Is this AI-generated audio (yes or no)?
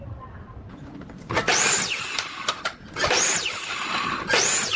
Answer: no